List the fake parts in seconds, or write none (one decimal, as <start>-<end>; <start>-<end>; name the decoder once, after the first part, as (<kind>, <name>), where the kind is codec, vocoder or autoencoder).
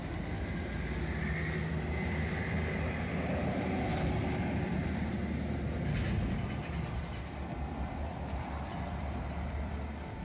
1.7-3.9 (vocoder, BigVGAN v2); 7.8-10.2